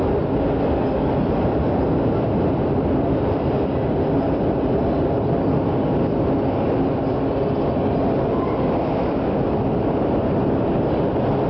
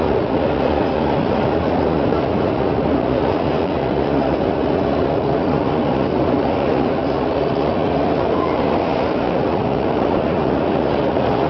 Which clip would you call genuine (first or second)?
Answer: first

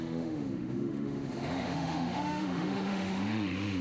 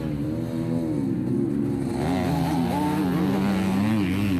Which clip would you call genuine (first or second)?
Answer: second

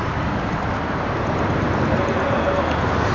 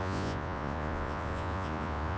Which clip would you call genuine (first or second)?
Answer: first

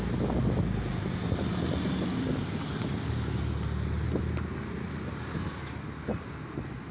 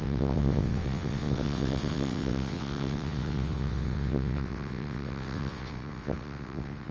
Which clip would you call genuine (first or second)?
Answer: first